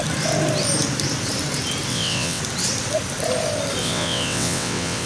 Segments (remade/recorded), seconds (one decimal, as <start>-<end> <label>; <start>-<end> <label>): 0.0-1.9 recorded; 1.9-2.4 remade; 2.4-3.8 recorded; 3.8-5.1 remade

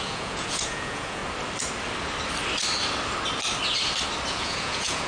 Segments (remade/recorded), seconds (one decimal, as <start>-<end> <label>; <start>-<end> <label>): 0.0-1.2 remade; 1.2-4.3 recorded; 4.3-5.1 remade

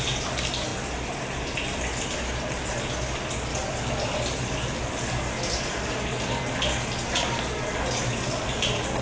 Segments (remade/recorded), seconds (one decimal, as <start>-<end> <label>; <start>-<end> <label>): 0.0-9.0 recorded

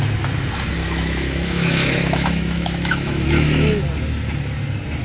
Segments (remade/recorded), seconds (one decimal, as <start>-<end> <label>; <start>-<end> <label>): 0.0-0.8 recorded; 0.8-3.8 remade; 3.8-5.0 recorded

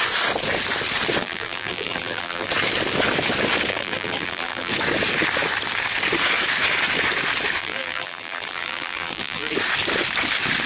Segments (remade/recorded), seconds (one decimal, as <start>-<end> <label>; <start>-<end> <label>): 0.0-1.2 recorded; 1.2-2.5 remade; 2.5-3.7 recorded; 3.7-4.7 remade; 4.7-7.6 recorded; 7.6-9.5 remade; 9.5-10.7 recorded

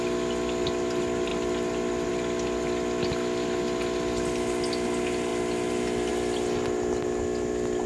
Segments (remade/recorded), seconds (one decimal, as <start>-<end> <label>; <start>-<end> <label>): 0.0-7.9 recorded

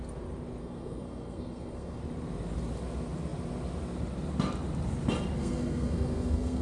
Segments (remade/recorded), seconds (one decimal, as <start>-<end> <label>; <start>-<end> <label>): 0.0-0.6 recorded; 0.6-2.0 remade; 2.0-5.4 recorded; 5.4-6.6 remade